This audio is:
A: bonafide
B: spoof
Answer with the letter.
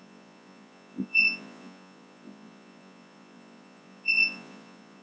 B